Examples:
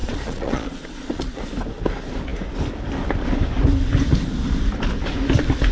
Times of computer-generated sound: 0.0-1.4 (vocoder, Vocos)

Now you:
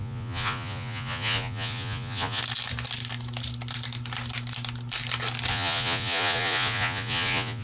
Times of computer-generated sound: 0.0-2.4 (vocoder, Vocos); 5.5-7.6